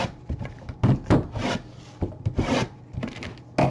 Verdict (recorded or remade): recorded